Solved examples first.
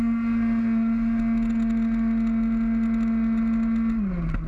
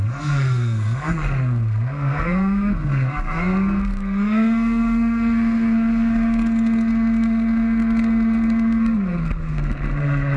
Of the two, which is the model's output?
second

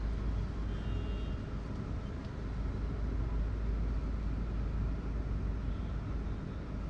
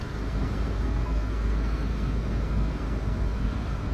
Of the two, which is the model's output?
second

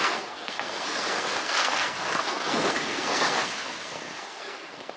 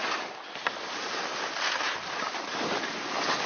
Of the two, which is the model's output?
first